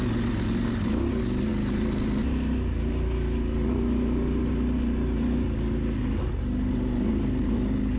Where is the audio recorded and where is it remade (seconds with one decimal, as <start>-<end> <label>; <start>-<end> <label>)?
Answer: 0.0-8.0 recorded